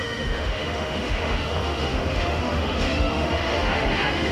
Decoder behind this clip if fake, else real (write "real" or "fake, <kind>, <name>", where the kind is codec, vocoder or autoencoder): fake, autoencoder, DAC-VAE